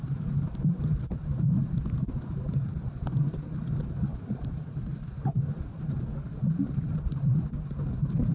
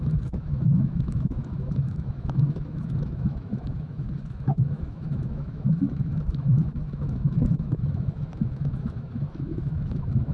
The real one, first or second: first